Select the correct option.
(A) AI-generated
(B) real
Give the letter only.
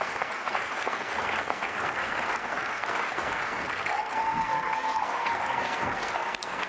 A